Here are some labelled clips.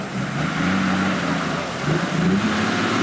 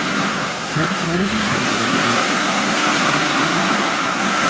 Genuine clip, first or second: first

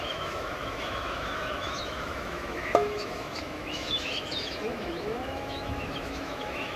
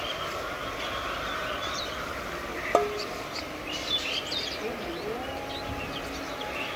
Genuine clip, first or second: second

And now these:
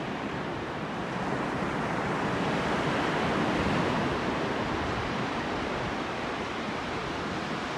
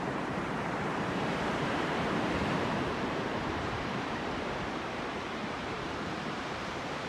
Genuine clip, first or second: first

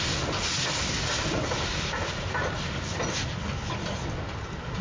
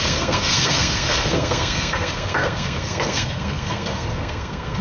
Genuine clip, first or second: first